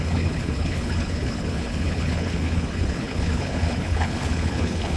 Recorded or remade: remade